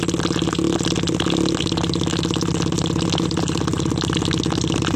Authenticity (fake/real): real